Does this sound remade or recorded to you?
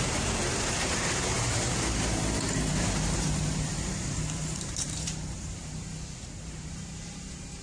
remade